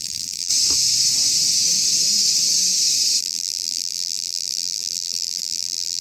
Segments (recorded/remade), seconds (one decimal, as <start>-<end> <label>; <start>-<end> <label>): 0.0-0.5 remade; 0.5-3.2 recorded; 3.2-6.0 remade

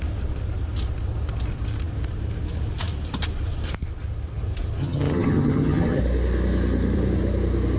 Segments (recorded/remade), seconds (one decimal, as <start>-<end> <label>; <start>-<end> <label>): 0.0-4.8 recorded; 4.8-6.0 remade; 6.0-7.8 recorded